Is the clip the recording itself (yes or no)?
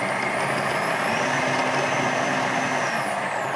yes